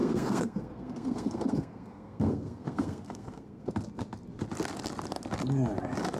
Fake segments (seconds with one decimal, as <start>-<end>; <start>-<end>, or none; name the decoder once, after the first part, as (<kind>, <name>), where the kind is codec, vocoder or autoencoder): 0.0-3.7 (codec, SNAC)